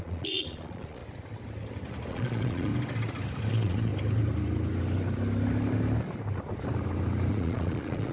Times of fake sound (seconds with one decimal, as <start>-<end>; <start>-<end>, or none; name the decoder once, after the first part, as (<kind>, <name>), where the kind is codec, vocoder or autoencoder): 0.0-1.0 (vocoder, Vocos); 2.1-2.7; 3.5-3.9; 7.3-8.1